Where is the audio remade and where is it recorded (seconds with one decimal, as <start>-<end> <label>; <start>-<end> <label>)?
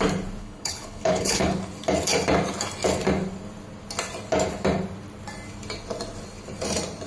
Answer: 0.0-0.4 recorded; 0.4-1.6 remade; 1.6-7.1 recorded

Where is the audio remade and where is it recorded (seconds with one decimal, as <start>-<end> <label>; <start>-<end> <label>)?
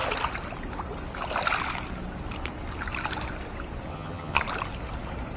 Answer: 0.0-3.9 recorded; 3.9-4.4 remade; 4.4-5.4 recorded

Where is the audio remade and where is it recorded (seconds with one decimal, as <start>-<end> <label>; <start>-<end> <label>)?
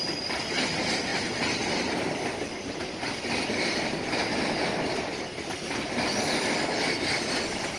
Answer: 0.0-7.8 recorded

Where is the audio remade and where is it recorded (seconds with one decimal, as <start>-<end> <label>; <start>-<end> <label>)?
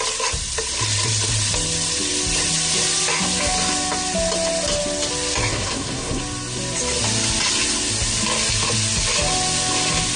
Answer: 0.0-5.5 recorded; 5.5-6.2 remade; 6.2-10.2 recorded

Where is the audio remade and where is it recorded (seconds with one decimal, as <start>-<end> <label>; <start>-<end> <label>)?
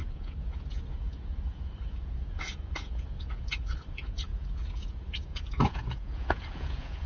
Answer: 0.0-7.1 remade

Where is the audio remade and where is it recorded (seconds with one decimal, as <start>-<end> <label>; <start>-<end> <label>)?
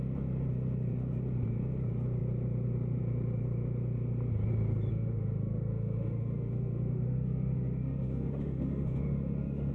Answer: 0.0-4.9 recorded; 4.9-9.7 remade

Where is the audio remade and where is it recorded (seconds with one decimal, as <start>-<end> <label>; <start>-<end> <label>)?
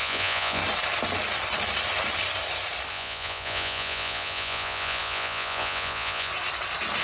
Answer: 0.0-0.6 remade; 0.6-2.9 recorded; 2.9-6.3 remade; 6.3-7.0 recorded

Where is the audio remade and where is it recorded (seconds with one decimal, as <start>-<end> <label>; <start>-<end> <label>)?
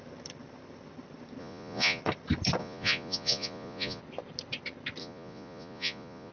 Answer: 0.0-1.4 recorded; 1.4-2.0 remade; 2.0-2.6 recorded; 2.6-4.0 remade; 4.0-5.0 recorded; 5.0-6.3 remade